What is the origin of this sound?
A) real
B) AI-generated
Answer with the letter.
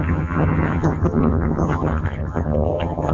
B